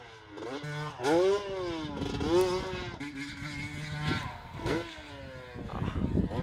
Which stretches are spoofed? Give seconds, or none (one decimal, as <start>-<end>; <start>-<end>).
4.3-5.1